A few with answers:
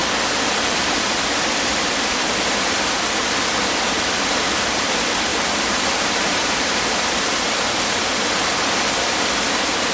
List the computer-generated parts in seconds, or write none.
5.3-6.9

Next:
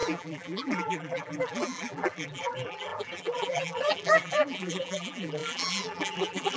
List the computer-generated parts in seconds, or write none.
0.0-6.6

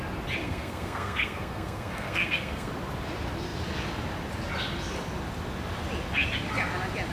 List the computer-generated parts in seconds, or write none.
0.4-2.7

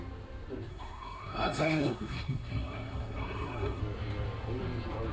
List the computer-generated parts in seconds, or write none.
0.7-3.8

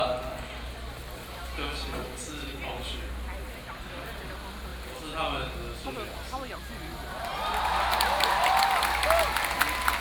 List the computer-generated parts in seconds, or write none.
none

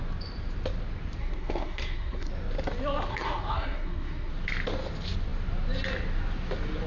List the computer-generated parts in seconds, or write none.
1.2-2.3; 3.1-4.3

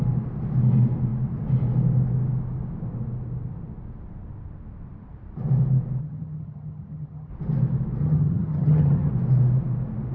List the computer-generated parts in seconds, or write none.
6.0-7.3; 8.0-9.1